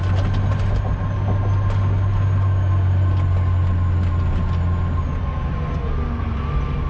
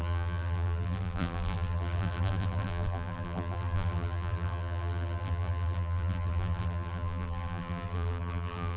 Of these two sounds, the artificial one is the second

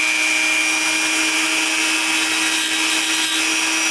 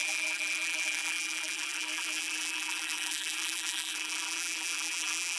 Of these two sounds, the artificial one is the second